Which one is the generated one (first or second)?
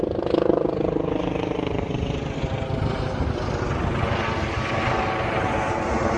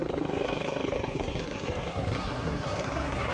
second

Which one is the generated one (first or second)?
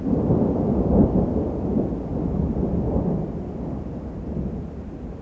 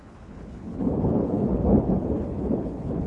second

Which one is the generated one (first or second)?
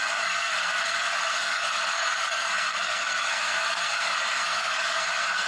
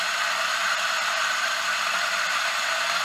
first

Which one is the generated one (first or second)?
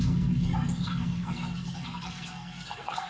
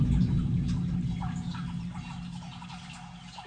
first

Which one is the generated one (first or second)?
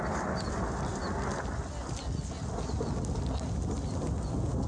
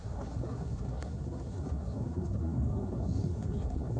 second